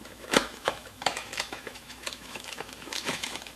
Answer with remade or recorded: remade